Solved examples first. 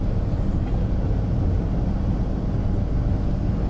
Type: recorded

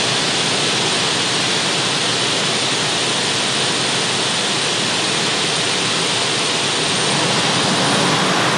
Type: recorded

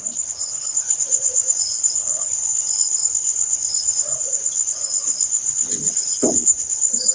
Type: remade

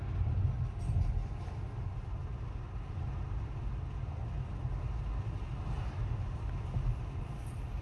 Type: recorded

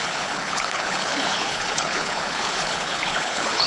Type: remade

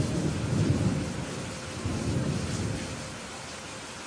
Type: recorded